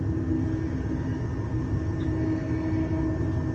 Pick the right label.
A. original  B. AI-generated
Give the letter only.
A